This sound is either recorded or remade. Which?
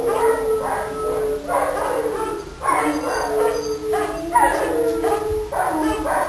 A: recorded